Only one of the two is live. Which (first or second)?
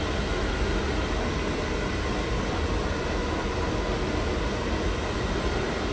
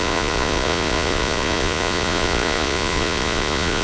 first